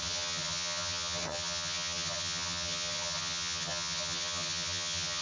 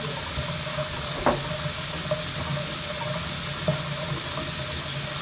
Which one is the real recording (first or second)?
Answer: second